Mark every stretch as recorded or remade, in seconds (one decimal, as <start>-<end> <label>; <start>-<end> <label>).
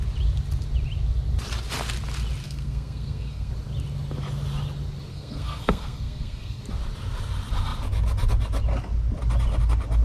0.0-2.4 recorded; 2.4-3.5 remade; 3.5-5.1 recorded; 5.1-6.6 remade; 6.6-10.0 recorded